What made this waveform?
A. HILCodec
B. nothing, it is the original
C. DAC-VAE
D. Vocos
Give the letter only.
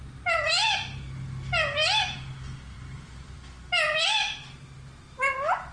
B